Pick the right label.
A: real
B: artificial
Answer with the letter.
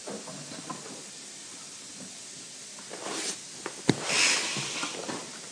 A